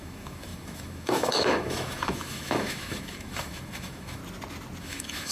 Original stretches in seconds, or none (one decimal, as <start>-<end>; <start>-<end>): 4.2-4.8